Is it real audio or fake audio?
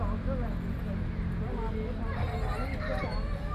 real